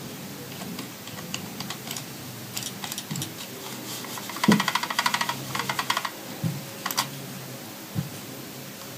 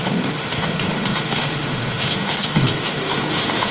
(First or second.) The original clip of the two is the first